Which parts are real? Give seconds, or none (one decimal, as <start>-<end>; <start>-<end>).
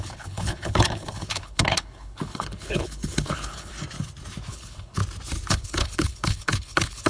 3.7-4.5; 5.0-5.5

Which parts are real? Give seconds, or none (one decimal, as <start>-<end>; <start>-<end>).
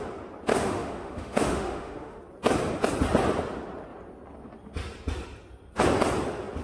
0.0-0.5; 2.2-6.6